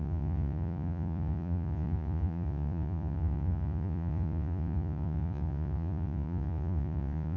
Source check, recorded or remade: remade